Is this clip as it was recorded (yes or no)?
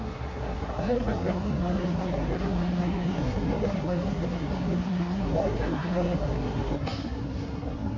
no